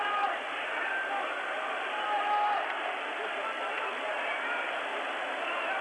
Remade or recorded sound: recorded